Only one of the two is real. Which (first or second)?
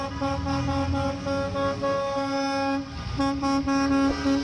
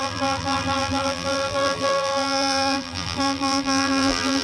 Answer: first